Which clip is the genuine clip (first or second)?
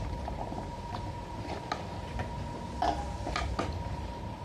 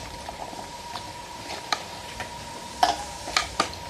first